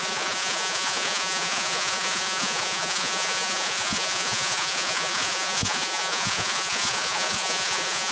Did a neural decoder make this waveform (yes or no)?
yes